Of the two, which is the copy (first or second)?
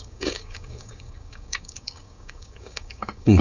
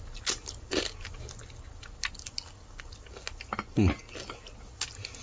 first